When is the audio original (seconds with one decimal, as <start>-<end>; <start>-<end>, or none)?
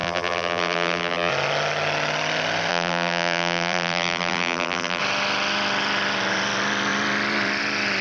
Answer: 1.3-2.7; 5.0-8.0